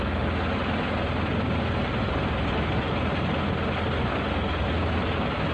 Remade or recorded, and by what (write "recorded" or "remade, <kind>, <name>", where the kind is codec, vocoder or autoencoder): recorded